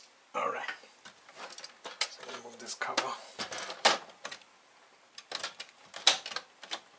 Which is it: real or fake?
real